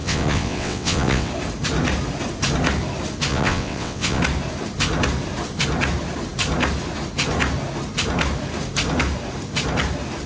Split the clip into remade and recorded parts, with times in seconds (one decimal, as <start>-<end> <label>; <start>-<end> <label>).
0.0-1.3 remade; 1.3-3.3 recorded; 3.3-4.2 remade; 4.2-10.3 recorded

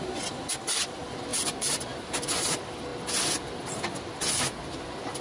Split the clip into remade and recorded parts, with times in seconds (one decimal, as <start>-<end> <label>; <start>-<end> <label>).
0.0-1.3 recorded; 1.3-2.3 remade; 2.3-5.2 recorded

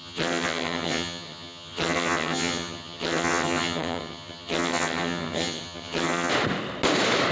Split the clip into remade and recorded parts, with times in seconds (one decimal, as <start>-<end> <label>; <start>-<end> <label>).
0.0-6.3 remade; 6.3-7.3 recorded

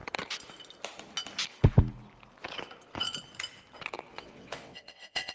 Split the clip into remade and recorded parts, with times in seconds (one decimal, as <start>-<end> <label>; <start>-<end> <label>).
0.0-4.1 recorded; 4.1-5.3 remade

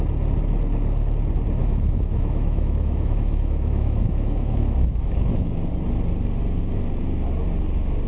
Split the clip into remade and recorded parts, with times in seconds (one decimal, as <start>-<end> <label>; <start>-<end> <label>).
0.0-1.6 recorded; 1.6-5.5 remade; 5.5-8.1 recorded

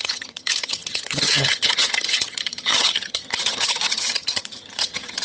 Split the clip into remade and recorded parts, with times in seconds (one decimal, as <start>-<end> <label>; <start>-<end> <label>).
0.0-5.2 remade

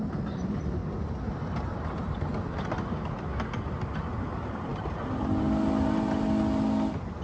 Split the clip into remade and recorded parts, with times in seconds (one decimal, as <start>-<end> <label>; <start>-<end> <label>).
0.0-0.8 remade; 0.8-4.2 recorded; 4.2-4.7 remade; 4.7-7.2 recorded